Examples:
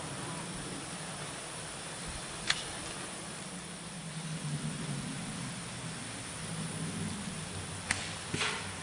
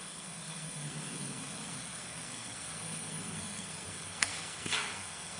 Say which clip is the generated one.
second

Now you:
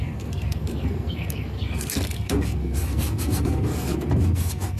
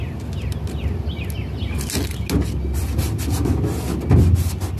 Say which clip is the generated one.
first